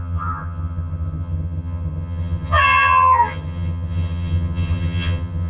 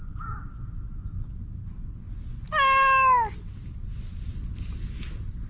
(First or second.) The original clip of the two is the second